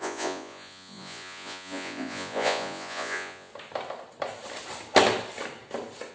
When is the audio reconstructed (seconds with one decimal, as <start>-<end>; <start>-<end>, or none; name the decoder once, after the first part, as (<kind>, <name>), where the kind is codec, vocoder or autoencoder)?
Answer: 0.0-3.5 (vocoder, Vocos)